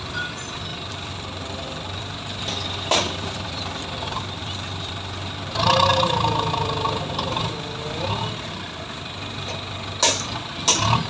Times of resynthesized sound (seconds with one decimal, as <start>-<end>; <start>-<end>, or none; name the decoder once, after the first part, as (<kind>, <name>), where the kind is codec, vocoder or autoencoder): 0.7-3.6 (vocoder, BigVGAN v2); 4.4-4.9

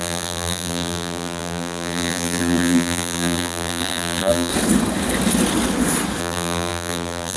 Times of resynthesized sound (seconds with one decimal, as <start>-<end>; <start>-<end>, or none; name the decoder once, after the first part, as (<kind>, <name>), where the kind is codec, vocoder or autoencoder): 0.0-4.5 (vocoder, BigVGAN v2); 6.2-7.4